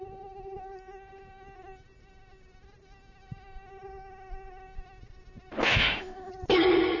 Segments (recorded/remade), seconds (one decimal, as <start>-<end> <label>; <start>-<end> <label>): 0.0-5.6 recorded; 5.6-6.3 remade; 6.3-7.0 recorded